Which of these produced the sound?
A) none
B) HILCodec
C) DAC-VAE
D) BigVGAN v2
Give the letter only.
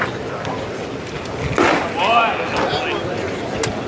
A